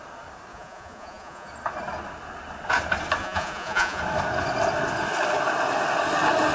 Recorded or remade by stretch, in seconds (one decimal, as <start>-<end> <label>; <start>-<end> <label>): 0.0-0.5 recorded; 0.5-1.5 remade; 1.5-3.2 recorded; 3.2-4.0 remade; 4.0-6.5 recorded